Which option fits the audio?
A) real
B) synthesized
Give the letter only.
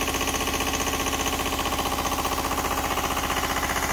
A